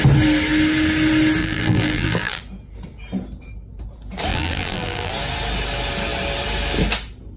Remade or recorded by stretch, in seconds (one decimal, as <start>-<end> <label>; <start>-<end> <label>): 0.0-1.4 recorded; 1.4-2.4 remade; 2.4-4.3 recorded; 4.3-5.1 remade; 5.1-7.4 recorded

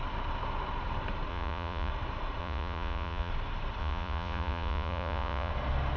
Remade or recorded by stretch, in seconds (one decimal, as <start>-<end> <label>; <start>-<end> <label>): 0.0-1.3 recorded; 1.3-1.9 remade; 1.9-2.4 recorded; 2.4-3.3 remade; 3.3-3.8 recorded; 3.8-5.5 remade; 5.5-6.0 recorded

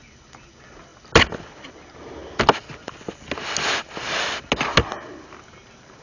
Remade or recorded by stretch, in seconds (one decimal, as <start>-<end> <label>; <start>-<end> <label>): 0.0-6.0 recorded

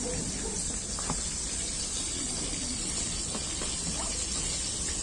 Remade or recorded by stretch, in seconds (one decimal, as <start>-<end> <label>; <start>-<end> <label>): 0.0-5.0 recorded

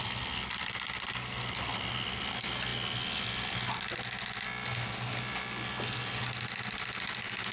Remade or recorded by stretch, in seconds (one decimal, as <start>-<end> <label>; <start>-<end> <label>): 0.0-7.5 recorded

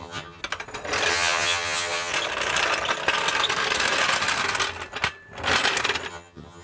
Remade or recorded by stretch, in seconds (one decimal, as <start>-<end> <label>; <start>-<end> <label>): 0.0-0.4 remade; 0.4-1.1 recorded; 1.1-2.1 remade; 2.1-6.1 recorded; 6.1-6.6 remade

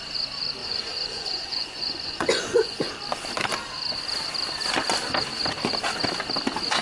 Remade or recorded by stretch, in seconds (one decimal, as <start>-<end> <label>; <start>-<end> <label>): 0.0-0.6 recorded; 0.6-2.9 remade; 2.9-6.8 recorded